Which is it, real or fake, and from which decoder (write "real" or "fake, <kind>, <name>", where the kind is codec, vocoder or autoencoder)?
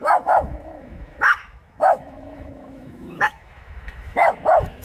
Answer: fake, autoencoder, DAC-VAE